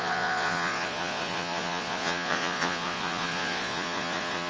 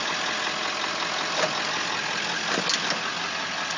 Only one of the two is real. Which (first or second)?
second